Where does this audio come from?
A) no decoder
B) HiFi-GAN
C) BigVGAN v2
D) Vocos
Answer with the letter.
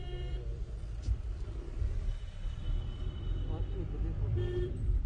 C